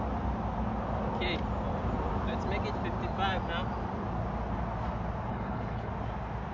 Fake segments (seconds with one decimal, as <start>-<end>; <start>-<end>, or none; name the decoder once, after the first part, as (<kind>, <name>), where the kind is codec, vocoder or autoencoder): 5.3-5.9 (codec, HILCodec)